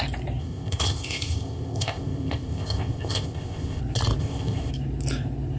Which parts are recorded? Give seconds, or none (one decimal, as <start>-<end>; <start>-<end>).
0.0-0.4; 3.8-4.2; 4.7-5.6